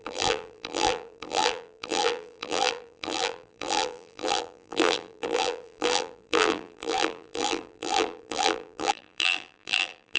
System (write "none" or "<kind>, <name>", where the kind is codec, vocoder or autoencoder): vocoder, BigVGAN v2